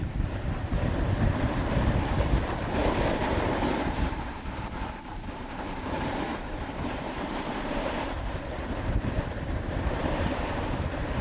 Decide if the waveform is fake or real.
fake